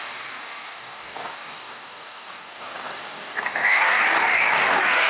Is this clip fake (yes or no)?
yes